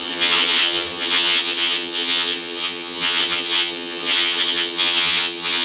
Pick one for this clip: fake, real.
fake